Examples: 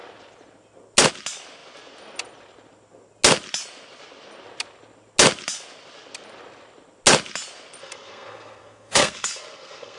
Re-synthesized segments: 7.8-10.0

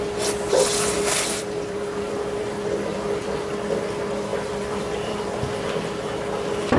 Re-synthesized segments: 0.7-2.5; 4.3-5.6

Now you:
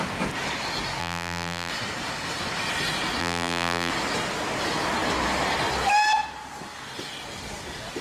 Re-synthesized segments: 1.0-1.7; 3.2-3.9

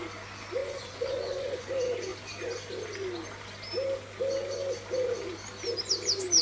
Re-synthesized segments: 0.6-1.7

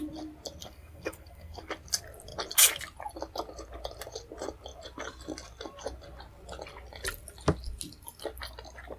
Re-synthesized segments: 0.6-1.7

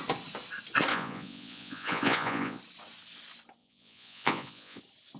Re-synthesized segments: 0.9-2.6; 3.6-4.8

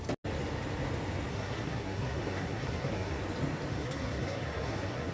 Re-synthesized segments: 1.3-3.2; 3.7-5.1

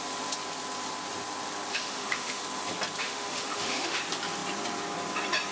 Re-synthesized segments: 1.7-2.4; 3.0-4.0